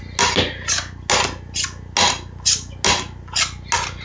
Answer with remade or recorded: recorded